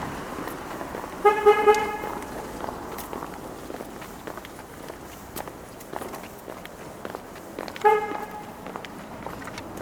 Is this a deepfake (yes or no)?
no